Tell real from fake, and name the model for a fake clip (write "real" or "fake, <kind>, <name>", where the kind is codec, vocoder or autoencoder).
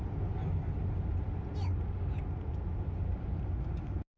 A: real